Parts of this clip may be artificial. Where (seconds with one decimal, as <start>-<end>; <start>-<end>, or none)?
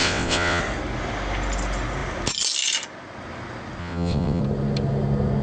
0.0-0.6; 3.8-4.4